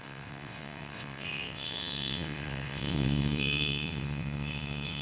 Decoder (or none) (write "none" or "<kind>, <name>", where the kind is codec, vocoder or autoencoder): vocoder, WaveNeXt